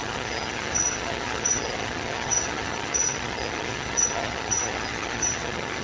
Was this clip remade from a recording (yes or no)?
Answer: yes